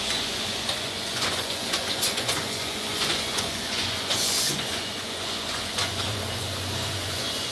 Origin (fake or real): fake